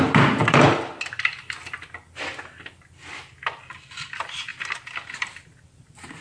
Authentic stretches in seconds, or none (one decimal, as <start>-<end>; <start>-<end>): 0.0-6.2